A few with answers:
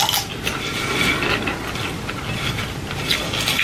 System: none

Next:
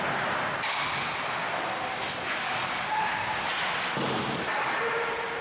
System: none